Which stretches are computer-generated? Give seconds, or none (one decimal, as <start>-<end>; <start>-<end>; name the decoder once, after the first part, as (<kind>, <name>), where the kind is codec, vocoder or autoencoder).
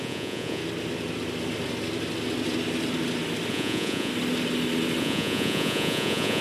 0.0-0.6 (vocoder, Vocos); 3.5-4.1; 5.0-6.4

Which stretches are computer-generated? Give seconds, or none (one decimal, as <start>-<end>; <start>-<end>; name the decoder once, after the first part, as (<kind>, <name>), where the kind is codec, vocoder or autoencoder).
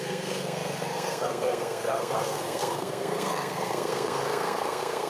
0.0-5.1 (codec, SNAC)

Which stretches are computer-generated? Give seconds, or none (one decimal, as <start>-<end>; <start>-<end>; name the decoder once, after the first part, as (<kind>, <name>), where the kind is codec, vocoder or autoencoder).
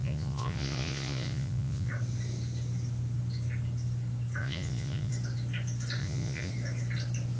0.0-1.9 (vocoder, Vocos); 4.4-5.1; 6.0-6.5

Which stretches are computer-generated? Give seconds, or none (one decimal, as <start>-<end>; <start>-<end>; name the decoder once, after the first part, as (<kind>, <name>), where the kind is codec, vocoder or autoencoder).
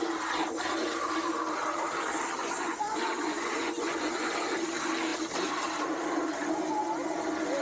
2.4-4.5 (vocoder, Vocos)